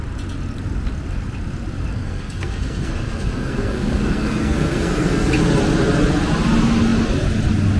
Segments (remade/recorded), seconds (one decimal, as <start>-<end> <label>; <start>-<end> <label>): 0.0-1.9 recorded; 1.9-5.3 remade; 5.3-7.8 recorded